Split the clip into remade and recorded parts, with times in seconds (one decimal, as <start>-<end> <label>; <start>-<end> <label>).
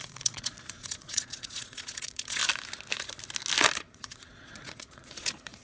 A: 0.0-2.4 remade; 2.4-3.8 recorded; 3.8-5.6 remade